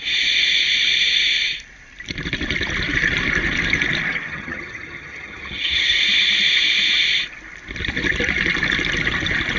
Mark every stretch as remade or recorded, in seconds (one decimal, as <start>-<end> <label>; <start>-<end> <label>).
0.0-4.3 recorded; 4.3-6.0 remade; 6.0-9.6 recorded